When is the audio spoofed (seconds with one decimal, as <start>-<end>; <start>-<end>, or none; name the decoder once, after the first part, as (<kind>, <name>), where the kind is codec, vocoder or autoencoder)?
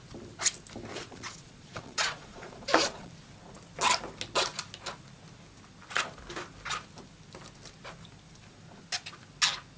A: 0.9-3.1 (vocoder, Vocos)